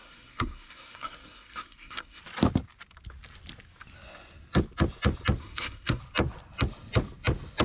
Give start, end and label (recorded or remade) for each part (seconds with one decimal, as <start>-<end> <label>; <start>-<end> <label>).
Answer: 0.0-2.2 remade; 2.2-5.4 recorded; 5.4-6.0 remade; 6.0-7.6 recorded